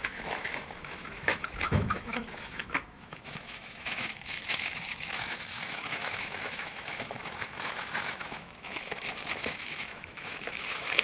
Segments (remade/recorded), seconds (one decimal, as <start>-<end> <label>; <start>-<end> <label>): 0.0-11.0 remade